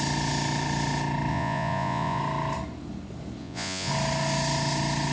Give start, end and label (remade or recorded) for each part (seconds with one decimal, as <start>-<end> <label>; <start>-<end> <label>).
0.0-1.3 recorded; 1.3-2.2 remade; 2.2-3.4 recorded; 3.4-3.9 remade; 3.9-5.1 recorded